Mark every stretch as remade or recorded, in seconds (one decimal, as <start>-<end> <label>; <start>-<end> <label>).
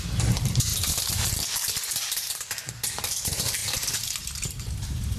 0.0-3.6 remade; 3.6-4.2 recorded; 4.2-5.2 remade